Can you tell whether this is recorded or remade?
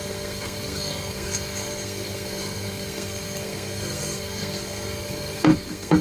remade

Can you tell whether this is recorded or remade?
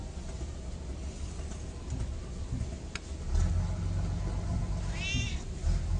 recorded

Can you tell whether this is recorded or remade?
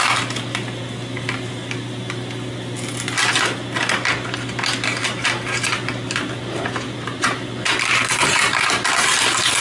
recorded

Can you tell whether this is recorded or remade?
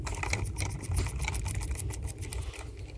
recorded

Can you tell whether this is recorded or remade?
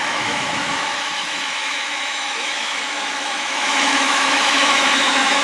remade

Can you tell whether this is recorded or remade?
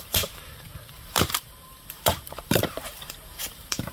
remade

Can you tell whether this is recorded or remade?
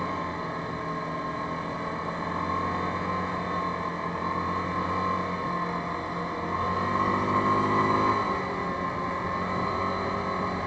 recorded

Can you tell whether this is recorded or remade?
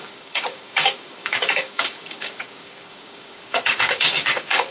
remade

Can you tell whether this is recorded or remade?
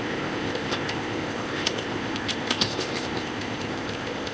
remade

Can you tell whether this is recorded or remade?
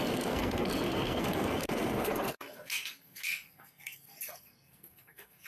remade